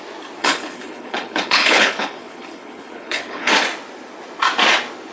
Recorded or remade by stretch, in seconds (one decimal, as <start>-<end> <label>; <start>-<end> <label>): 0.0-0.4 recorded; 0.4-3.5 remade; 3.5-5.1 recorded